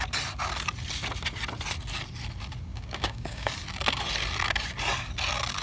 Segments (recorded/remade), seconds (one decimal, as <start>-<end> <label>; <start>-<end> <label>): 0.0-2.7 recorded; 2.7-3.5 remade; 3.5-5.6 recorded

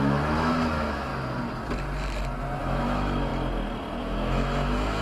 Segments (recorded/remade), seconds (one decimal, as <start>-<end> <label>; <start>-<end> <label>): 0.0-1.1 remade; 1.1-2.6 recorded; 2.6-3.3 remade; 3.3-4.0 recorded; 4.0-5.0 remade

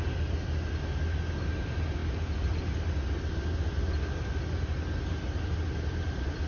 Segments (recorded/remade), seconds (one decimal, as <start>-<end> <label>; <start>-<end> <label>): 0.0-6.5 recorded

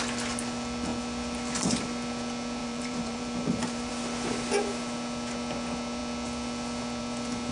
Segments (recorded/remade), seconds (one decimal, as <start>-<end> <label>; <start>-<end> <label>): 0.0-2.6 recorded; 2.6-3.9 remade; 3.9-7.5 recorded

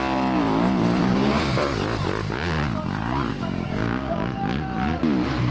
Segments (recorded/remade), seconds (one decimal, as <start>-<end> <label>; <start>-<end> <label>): 0.0-1.0 recorded; 1.0-1.6 remade; 1.6-3.3 recorded; 3.3-4.4 remade; 4.4-5.5 recorded